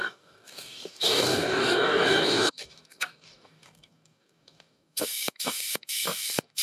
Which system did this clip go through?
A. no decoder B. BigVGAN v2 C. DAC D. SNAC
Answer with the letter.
C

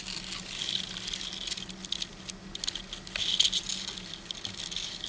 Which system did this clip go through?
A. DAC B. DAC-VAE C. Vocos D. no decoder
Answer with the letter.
D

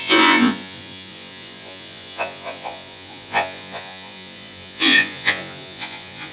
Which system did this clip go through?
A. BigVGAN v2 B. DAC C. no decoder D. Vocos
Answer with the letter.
D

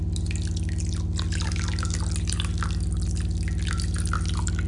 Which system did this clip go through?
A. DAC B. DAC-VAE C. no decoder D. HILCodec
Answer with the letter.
C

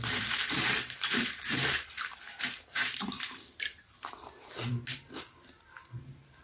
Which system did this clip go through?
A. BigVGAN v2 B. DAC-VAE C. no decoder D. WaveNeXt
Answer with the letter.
A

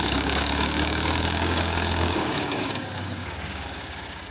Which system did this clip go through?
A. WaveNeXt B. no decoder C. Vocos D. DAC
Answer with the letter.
D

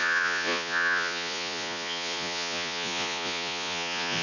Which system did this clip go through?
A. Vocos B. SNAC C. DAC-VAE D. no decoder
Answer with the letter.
A